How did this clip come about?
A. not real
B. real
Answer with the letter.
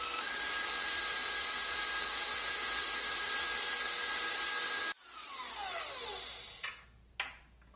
B